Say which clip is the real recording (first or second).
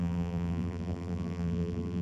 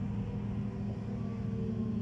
second